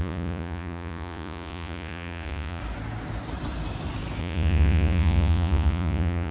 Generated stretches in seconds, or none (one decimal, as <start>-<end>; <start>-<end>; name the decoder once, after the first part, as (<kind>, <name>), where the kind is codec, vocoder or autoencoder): 0.0-2.6 (vocoder, Vocos); 4.2-6.3